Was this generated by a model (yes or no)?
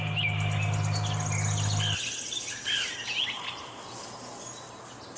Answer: no